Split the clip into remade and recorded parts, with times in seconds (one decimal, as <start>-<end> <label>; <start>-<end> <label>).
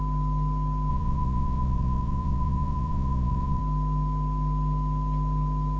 0.0-0.9 recorded; 0.9-3.6 remade; 3.6-5.8 recorded